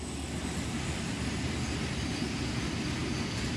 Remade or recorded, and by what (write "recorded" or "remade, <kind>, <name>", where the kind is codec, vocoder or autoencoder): recorded